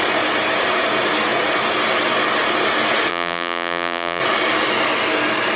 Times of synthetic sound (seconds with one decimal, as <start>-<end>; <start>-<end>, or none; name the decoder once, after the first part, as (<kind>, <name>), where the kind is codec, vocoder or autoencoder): 3.1-4.2 (vocoder, BigVGAN v2)